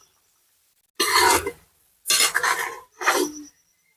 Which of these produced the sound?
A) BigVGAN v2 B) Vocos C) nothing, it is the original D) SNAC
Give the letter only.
C